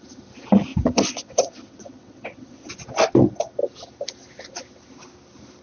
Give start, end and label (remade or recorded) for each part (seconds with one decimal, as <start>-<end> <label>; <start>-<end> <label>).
0.0-0.7 recorded; 0.7-2.7 remade; 2.7-5.6 recorded